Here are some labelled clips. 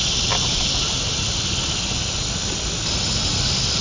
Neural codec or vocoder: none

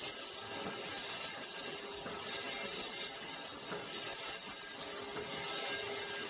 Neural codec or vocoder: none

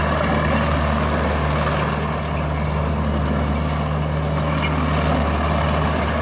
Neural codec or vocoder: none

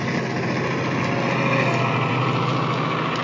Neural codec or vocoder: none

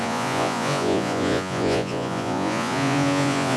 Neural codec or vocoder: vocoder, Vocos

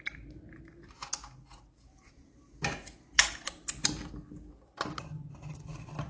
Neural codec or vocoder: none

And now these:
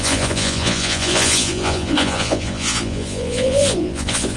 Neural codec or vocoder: vocoder, Vocos